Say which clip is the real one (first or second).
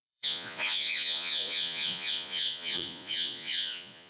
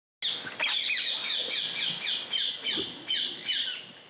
second